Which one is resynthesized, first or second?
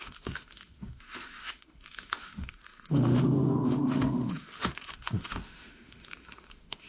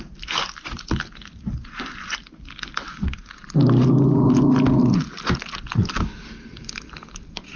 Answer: first